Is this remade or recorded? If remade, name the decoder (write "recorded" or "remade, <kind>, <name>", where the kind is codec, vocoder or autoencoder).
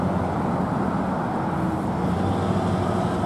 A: recorded